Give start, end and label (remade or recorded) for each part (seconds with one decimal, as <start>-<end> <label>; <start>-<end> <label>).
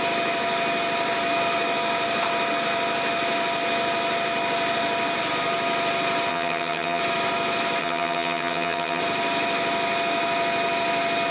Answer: 0.0-6.3 recorded; 6.3-7.0 remade; 7.0-7.8 recorded; 7.8-9.0 remade; 9.0-11.3 recorded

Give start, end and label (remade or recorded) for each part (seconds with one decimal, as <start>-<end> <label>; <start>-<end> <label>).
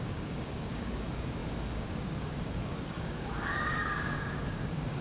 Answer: 0.0-5.0 remade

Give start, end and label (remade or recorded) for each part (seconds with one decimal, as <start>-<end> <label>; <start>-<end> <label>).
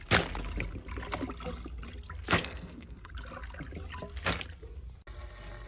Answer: 0.0-2.4 recorded; 2.4-3.1 remade; 3.1-5.7 recorded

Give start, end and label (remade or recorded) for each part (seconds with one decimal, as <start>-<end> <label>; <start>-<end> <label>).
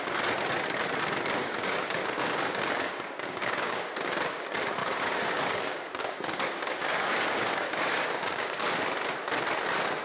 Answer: 0.0-1.4 recorded; 1.4-3.9 remade; 3.9-4.8 recorded; 4.8-8.7 remade; 8.7-10.0 recorded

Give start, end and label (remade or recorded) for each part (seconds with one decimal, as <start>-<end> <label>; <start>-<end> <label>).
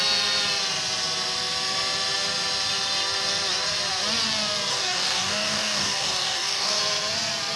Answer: 0.0-4.7 recorded; 4.7-6.8 remade; 6.8-7.6 recorded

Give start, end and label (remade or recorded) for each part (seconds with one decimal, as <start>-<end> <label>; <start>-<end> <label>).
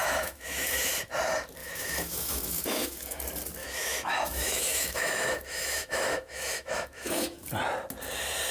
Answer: 0.0-0.9 remade; 0.9-1.6 recorded; 1.6-3.2 remade; 3.2-3.6 recorded; 3.6-7.5 remade; 7.5-8.5 recorded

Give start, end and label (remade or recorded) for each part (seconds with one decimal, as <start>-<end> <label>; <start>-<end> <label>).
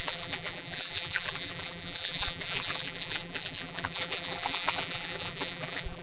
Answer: 0.0-6.0 remade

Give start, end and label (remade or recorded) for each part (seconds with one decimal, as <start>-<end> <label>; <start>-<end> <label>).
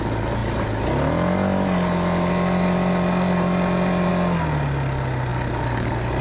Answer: 0.0-6.2 recorded